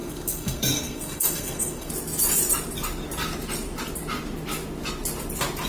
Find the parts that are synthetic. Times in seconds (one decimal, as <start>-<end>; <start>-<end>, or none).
0.0-1.9